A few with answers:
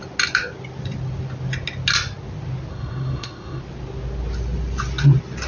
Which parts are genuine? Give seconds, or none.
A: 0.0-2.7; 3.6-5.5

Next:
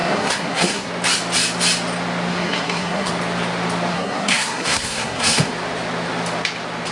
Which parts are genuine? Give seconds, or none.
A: 0.9-2.3; 3.1-3.9; 5.5-6.9